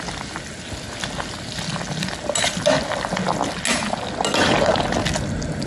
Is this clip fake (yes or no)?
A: no